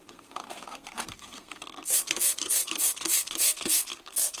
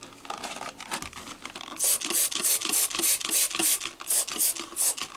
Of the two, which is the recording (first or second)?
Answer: second